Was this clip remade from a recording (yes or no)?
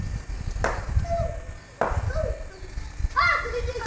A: no